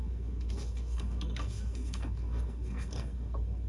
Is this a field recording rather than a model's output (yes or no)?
no